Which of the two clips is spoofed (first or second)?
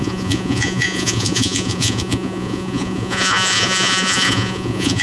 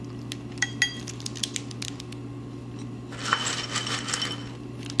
first